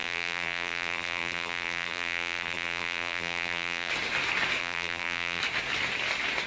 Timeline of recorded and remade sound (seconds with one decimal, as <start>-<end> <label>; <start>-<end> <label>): 0.0-3.9 remade; 3.9-4.6 recorded; 4.6-5.4 remade; 5.4-6.5 recorded